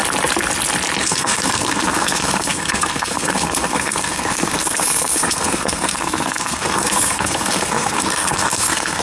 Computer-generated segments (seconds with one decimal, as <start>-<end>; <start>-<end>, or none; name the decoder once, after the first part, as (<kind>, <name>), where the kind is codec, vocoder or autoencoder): 1.0-9.0 (codec, SNAC)